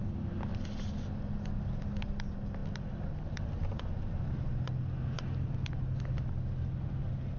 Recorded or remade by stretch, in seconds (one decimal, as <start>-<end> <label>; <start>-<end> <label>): 0.0-7.4 recorded